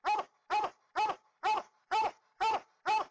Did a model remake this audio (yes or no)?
no